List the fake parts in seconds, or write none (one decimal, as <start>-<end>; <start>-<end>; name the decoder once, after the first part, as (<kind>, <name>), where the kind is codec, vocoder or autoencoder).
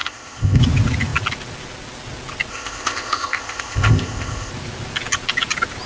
0.0-0.6 (codec, ZipCodec); 2.5-4.5